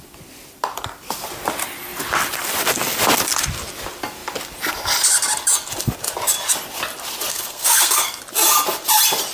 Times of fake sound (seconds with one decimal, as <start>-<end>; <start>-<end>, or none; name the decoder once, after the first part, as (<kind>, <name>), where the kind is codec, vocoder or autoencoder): 7.3-8.2 (codec, SNAC)